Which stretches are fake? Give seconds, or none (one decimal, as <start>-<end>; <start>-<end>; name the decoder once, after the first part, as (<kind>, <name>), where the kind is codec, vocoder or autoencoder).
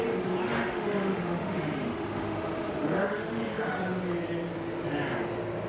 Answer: 0.4-3.8 (autoencoder, DAC-VAE)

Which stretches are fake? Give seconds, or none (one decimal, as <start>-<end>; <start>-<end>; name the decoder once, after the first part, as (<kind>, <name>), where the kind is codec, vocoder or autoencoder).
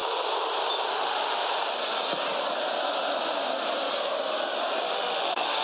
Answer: 0.9-1.4 (autoencoder, DAC-VAE); 4.8-5.6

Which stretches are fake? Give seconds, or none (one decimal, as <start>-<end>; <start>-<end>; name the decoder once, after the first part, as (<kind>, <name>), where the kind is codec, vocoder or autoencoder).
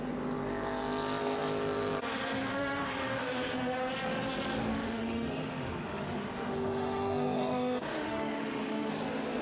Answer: 2.5-3.9 (autoencoder, DAC-VAE); 4.7-8.9